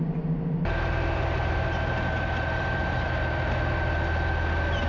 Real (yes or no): yes